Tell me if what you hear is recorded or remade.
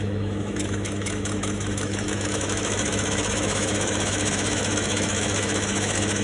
remade